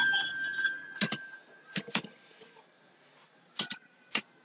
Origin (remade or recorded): recorded